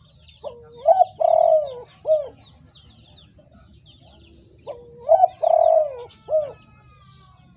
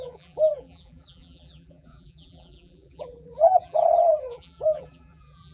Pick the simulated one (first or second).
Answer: second